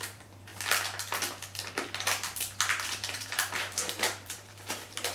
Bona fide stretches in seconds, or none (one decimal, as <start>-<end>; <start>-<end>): 0.5-2.7